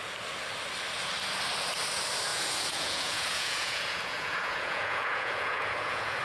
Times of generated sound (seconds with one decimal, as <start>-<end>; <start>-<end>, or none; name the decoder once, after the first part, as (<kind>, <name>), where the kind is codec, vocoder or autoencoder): 2.3-6.2 (vocoder, Vocos)